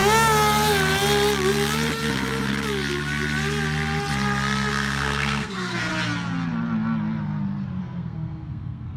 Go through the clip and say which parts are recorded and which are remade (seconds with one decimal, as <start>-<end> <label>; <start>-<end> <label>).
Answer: 0.0-4.7 recorded; 4.7-5.9 remade; 5.9-7.8 recorded; 7.8-9.0 remade